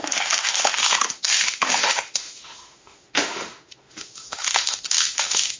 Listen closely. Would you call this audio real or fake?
fake